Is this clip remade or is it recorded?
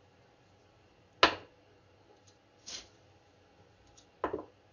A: recorded